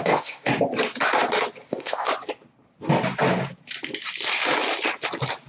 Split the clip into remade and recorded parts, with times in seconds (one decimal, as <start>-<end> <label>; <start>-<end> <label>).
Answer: 0.0-0.5 remade; 0.5-1.7 recorded; 1.7-2.1 remade; 2.1-5.5 recorded